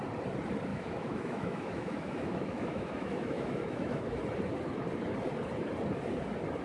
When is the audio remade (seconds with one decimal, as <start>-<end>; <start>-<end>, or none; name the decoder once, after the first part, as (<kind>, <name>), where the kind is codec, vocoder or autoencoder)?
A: 0.7-4.2 (autoencoder, DAC-VAE)